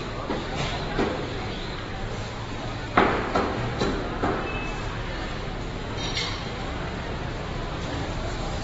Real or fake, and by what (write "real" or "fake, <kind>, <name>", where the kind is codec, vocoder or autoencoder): real